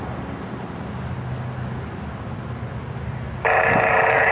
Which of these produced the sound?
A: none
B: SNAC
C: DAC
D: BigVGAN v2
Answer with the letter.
A